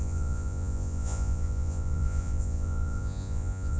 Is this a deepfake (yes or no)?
yes